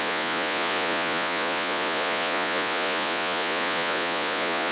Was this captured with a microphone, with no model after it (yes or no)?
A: no